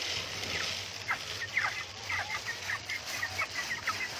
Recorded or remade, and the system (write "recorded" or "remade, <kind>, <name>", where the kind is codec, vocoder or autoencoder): recorded